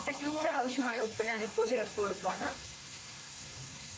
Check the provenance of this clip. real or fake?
fake